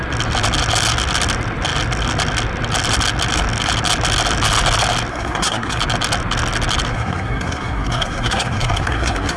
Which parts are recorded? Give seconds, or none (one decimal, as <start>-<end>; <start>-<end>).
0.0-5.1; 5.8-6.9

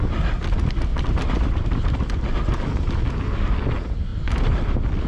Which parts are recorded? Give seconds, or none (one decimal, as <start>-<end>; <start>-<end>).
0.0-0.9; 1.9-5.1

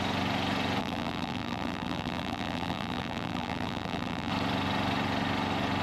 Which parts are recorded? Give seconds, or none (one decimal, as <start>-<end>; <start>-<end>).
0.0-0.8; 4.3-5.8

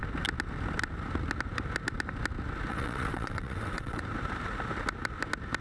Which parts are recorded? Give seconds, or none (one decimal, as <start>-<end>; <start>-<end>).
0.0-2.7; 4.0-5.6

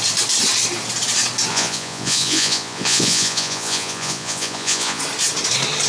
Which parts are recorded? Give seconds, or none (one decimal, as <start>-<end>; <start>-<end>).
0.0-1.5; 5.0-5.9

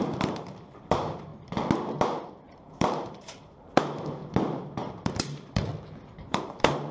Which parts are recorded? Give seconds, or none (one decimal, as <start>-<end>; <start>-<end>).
1.3-2.5; 4.2-4.9; 5.7-6.3

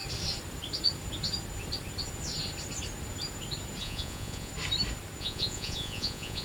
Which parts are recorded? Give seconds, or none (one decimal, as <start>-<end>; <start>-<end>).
0.0-3.8; 4.5-5.2